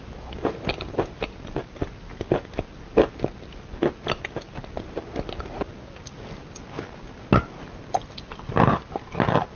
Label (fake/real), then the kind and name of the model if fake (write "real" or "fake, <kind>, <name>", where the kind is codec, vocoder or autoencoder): real